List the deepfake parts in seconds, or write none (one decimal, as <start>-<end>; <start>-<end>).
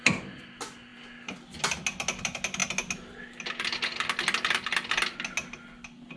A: none